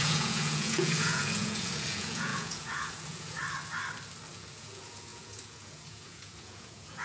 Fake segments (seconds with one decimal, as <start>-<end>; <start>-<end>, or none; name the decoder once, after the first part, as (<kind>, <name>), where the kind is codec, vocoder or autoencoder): 0.0-3.4 (vocoder, Vocos); 4.3-7.0